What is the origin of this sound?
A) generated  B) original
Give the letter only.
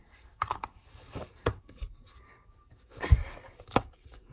A